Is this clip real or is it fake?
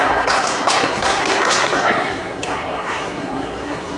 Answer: fake